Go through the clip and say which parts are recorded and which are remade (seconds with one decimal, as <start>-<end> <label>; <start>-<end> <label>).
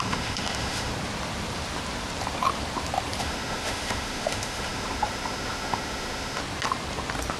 0.0-0.9 remade; 0.9-3.2 recorded; 3.2-6.4 remade; 6.4-7.4 recorded